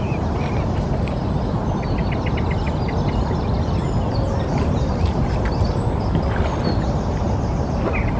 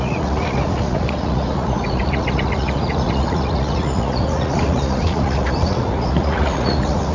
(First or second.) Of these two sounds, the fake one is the second